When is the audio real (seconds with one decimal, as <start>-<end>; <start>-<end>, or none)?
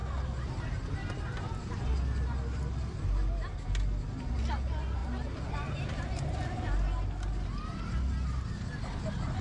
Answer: 0.0-9.4